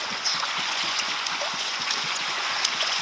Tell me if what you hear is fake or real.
fake